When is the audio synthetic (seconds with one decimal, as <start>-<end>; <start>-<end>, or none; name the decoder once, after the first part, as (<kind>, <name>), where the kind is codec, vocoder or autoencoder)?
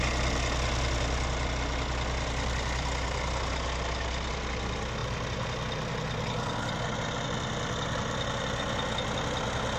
none